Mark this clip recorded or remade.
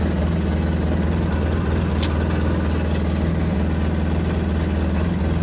recorded